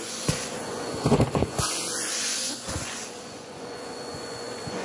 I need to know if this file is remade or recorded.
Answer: remade